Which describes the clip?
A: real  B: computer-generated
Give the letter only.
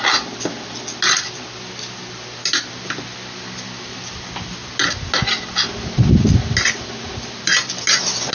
A